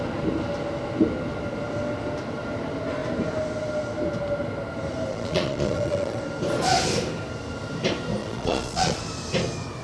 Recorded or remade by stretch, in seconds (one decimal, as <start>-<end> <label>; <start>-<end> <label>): 0.0-5.1 recorded; 5.1-6.2 remade; 6.2-8.2 recorded; 8.2-9.0 remade; 9.0-9.8 recorded